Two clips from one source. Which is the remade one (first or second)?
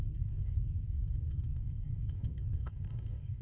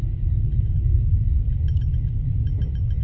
first